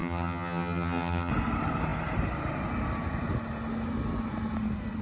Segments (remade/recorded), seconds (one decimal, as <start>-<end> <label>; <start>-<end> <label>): 0.0-1.3 remade; 1.3-5.0 recorded